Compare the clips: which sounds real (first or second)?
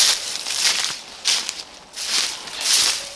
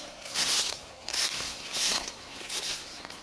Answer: first